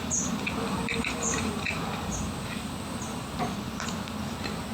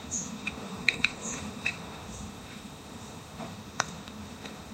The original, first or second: first